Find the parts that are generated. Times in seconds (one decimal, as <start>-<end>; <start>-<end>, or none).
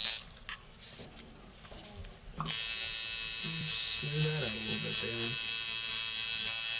none